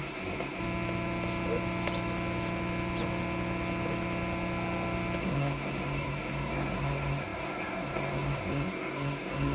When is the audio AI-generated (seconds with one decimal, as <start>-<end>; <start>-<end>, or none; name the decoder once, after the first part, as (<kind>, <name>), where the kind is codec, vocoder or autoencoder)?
0.0-0.6 (codec, SNAC); 5.2-9.5